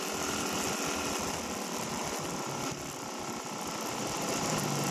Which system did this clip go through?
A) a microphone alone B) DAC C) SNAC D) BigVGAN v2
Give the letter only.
A